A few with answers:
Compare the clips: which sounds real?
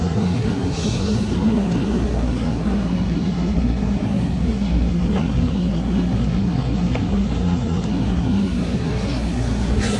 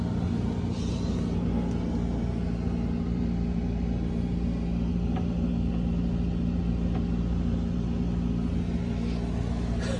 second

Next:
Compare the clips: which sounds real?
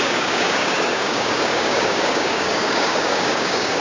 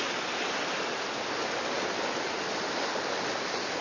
second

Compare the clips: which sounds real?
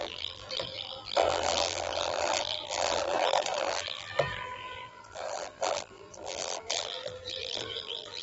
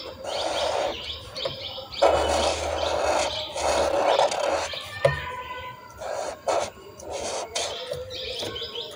second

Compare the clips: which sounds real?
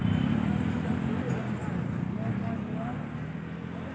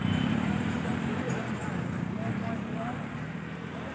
first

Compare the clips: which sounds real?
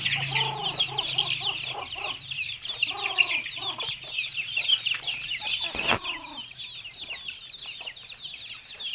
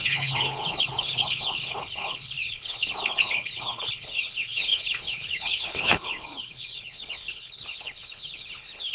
first